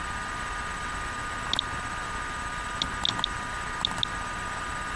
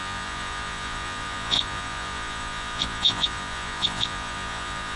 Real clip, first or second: first